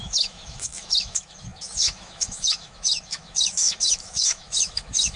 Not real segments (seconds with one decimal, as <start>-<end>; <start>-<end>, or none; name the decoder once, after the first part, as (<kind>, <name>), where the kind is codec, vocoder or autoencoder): 0.0-5.2 (autoencoder, DAC-VAE)